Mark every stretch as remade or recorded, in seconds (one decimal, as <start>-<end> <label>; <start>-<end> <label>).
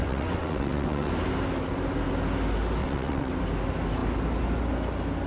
0.0-1.1 remade; 1.1-2.8 recorded; 2.8-3.3 remade; 3.3-5.3 recorded